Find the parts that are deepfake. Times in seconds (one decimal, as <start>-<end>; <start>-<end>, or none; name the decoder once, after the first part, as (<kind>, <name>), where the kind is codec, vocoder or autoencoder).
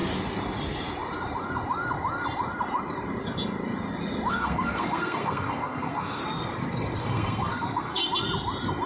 4.3-6.2 (codec, SNAC); 7.0-8.0